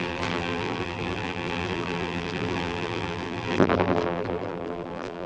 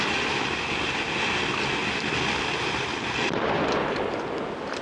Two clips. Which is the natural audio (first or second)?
second